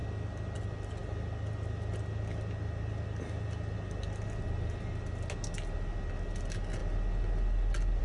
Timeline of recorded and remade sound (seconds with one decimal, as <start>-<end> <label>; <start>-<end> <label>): 0.0-8.0 recorded